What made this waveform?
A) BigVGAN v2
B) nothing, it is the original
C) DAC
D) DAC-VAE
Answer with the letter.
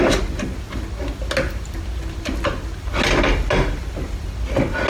B